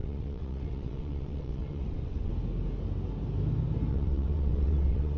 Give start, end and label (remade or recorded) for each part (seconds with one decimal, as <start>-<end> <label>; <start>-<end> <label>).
0.0-2.3 remade; 2.3-3.9 recorded; 3.9-5.2 remade